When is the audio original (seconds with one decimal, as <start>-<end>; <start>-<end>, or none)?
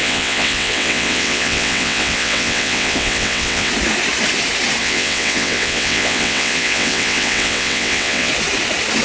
3.7-4.8; 8.3-9.0